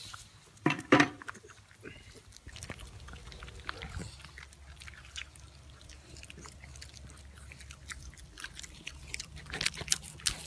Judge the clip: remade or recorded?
recorded